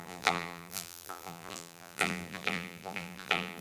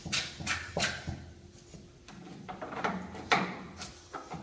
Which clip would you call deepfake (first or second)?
first